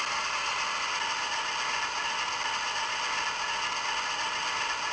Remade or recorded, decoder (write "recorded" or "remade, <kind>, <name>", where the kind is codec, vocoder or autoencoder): recorded